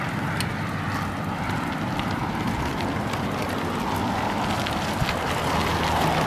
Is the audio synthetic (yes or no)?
no